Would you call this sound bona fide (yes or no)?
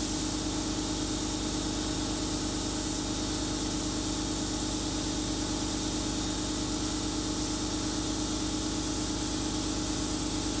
yes